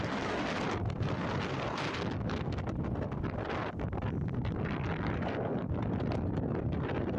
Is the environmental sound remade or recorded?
recorded